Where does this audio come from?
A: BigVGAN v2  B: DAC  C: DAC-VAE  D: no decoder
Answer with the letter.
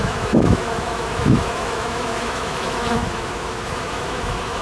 C